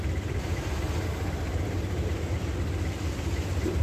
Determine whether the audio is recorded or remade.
recorded